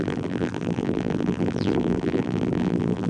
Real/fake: fake